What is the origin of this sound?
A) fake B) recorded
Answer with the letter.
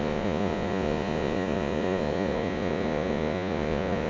A